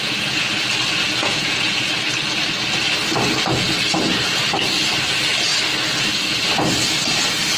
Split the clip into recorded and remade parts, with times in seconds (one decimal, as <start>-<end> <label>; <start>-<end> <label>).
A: 0.0-0.5 remade; 0.5-1.2 recorded; 1.2-1.9 remade; 1.9-7.6 recorded